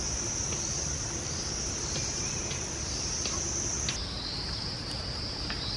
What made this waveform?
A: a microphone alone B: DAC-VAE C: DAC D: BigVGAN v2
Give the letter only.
A